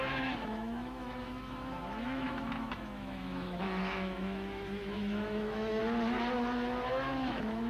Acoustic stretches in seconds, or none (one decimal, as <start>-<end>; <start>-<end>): 5.8-6.9